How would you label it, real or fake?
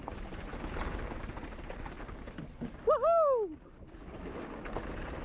real